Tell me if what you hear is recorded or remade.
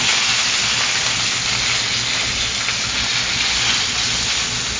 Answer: recorded